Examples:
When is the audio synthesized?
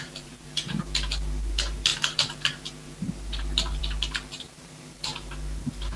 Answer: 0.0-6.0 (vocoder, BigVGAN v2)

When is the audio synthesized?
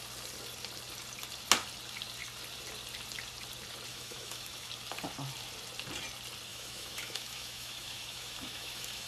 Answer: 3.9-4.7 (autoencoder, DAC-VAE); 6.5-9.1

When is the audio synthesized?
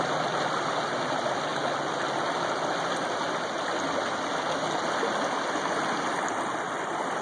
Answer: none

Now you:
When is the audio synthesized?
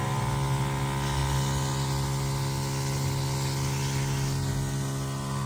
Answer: none